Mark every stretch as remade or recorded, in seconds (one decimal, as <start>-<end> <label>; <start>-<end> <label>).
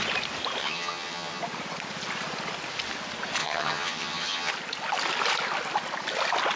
0.0-0.6 recorded; 0.6-1.4 remade; 1.4-3.4 recorded; 3.4-4.5 remade; 4.5-6.6 recorded